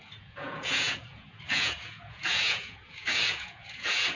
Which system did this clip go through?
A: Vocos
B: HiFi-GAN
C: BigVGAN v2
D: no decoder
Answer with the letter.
A